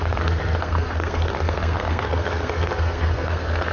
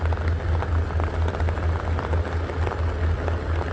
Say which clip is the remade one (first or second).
first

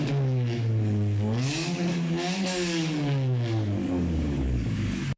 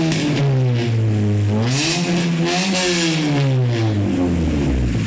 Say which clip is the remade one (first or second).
first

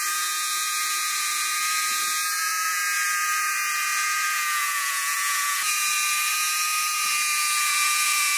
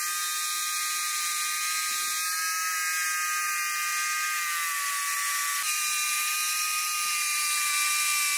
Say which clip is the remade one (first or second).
first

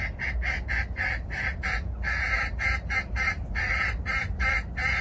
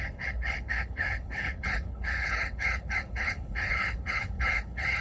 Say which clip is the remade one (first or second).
second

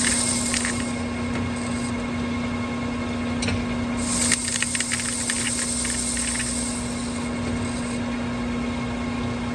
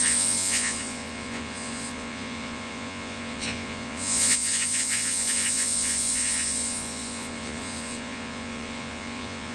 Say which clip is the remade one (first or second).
second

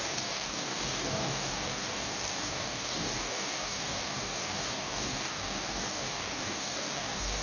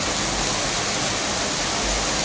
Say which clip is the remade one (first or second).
first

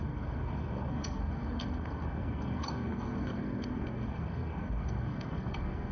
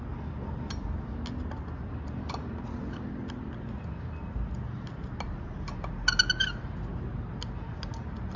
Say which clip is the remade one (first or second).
first